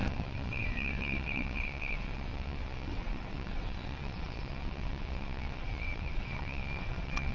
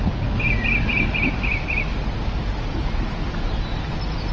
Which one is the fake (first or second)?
first